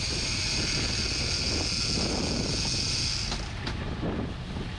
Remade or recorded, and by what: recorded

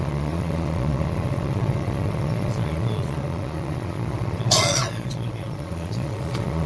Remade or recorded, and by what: remade, vocoder, Vocos